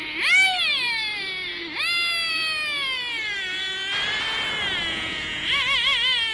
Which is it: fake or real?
real